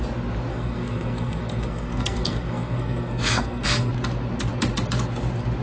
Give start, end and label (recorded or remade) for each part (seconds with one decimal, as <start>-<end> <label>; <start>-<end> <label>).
0.0-0.5 recorded; 0.5-3.9 remade; 3.9-5.6 recorded